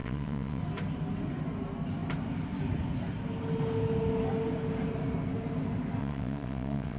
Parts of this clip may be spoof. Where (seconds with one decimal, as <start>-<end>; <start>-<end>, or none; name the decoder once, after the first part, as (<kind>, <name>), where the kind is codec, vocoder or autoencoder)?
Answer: 0.0-0.6 (vocoder, WaveNeXt); 6.0-7.0